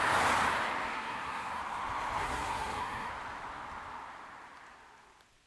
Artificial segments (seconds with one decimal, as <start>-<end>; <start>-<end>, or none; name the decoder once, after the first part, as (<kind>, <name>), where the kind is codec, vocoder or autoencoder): 0.9-1.6 (codec, SNAC); 2.2-3.1